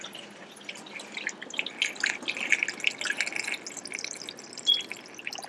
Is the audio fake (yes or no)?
no